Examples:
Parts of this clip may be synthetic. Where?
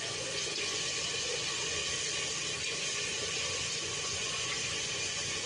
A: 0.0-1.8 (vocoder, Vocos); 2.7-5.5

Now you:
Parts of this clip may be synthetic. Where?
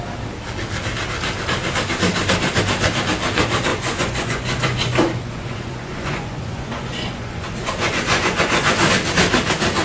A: 3.7-8.9 (vocoder, Vocos)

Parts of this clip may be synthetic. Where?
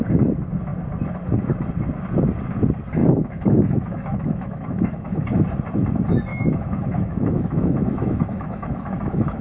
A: 3.0-5.4 (autoencoder, DAC-VAE); 6.3-9.4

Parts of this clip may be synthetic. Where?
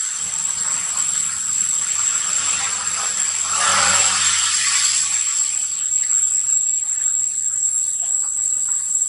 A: none